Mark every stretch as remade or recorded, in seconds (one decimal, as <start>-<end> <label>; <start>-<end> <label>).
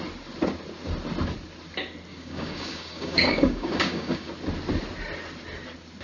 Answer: 0.0-2.1 recorded; 2.1-4.3 remade; 4.3-6.0 recorded